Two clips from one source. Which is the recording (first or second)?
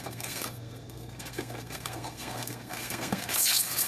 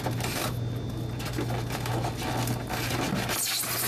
second